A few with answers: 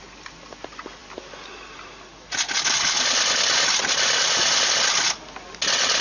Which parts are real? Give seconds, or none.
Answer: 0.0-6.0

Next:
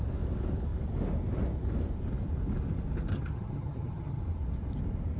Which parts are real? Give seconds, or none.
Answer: 0.0-3.1; 4.2-5.2

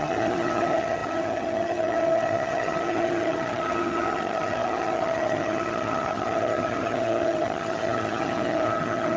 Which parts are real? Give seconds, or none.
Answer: none

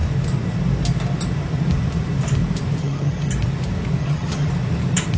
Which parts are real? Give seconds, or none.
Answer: 0.0-2.8; 3.3-4.0; 4.5-5.2

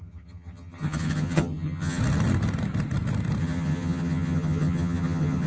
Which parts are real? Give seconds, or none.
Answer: 2.0-3.4

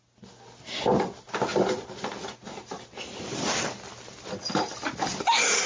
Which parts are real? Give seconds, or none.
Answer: 0.0-5.7

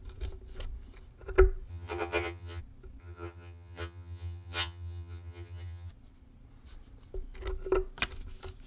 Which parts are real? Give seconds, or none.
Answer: 0.0-1.7; 2.6-3.0; 5.9-8.7

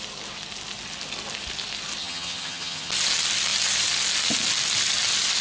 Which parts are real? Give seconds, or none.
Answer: 0.0-2.0; 2.9-5.4